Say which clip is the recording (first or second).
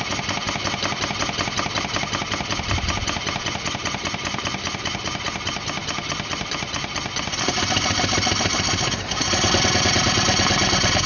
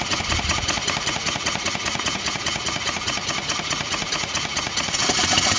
first